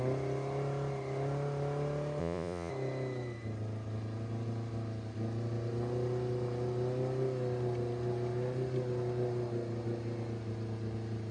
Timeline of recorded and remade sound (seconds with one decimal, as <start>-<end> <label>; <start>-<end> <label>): 0.0-2.2 recorded; 2.2-2.7 remade; 2.7-11.3 recorded